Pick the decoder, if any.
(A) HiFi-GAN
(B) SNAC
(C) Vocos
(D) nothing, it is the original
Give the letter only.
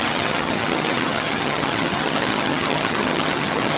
A